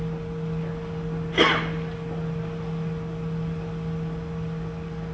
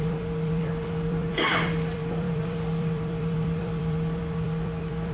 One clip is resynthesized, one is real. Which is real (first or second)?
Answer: first